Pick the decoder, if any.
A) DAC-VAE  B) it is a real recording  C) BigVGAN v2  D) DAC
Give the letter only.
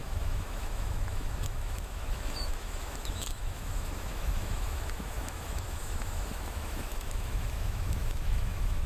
A